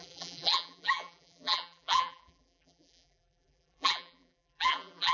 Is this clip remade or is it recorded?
remade